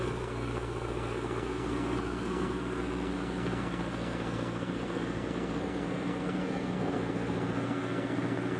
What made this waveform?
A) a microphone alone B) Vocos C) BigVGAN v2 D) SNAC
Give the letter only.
D